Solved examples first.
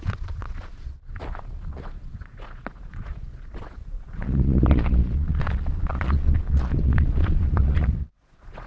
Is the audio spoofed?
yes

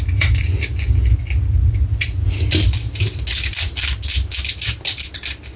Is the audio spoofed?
no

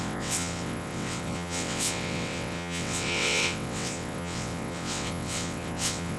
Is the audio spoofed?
yes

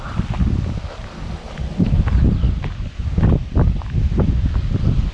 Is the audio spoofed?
no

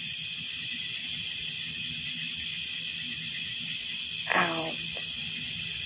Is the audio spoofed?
no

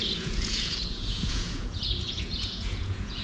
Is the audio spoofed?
yes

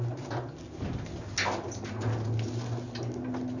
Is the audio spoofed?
no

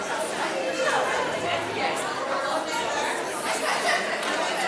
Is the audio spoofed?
no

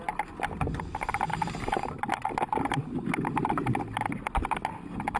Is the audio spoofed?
no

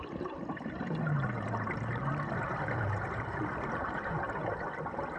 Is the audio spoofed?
yes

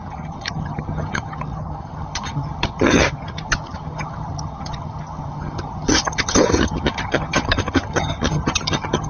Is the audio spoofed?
yes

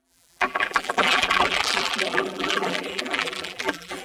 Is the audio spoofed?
yes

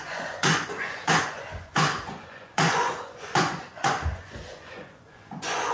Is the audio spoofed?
yes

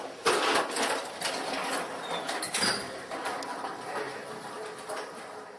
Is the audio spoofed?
no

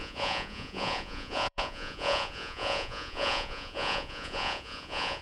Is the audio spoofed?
yes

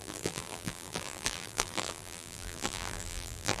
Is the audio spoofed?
yes